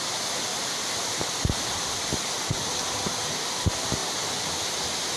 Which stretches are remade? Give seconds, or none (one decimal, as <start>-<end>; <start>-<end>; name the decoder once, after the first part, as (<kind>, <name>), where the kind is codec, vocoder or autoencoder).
none